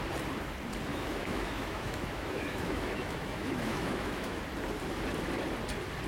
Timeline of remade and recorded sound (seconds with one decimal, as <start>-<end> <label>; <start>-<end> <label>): 0.0-0.9 recorded; 0.9-4.4 remade; 4.4-6.1 recorded